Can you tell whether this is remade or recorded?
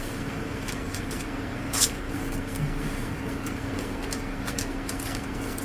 remade